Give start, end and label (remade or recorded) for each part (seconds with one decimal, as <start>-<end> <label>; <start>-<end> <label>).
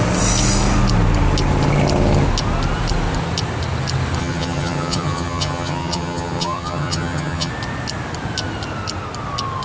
0.0-4.2 recorded; 4.2-7.5 remade; 7.5-9.6 recorded